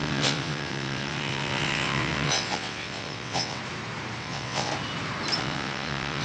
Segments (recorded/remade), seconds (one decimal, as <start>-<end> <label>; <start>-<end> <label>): 0.0-3.6 remade; 3.6-4.2 recorded; 4.2-4.7 remade; 4.7-5.4 recorded; 5.4-6.2 remade